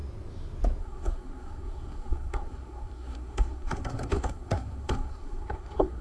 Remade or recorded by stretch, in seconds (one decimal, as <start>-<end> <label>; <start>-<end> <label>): 0.0-0.8 recorded; 0.8-6.0 remade